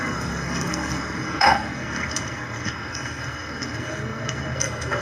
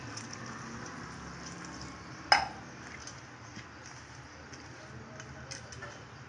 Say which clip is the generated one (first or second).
first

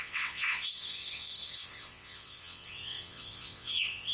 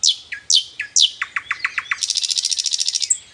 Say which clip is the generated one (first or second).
first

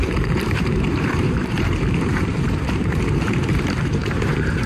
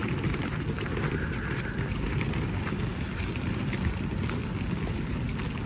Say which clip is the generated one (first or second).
first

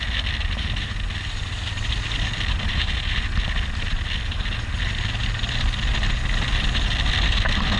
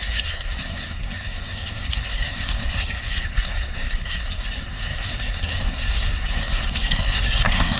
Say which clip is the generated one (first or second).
second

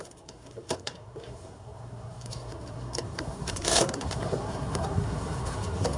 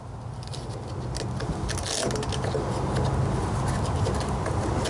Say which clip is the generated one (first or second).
first